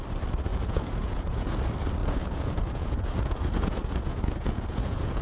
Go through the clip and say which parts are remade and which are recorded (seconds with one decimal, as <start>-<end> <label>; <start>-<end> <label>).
0.0-0.5 recorded; 0.5-1.6 remade; 1.6-2.0 recorded; 2.0-5.2 remade